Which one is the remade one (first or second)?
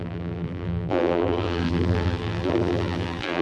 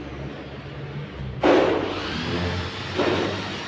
first